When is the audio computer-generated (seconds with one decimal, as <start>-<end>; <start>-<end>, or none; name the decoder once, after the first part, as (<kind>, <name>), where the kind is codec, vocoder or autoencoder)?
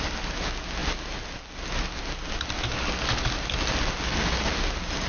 none